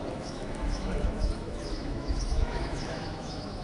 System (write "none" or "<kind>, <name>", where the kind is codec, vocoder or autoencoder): autoencoder, DAC-VAE